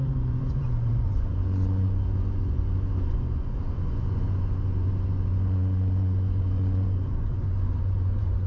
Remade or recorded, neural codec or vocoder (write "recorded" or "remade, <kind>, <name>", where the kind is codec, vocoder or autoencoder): remade, vocoder, Vocos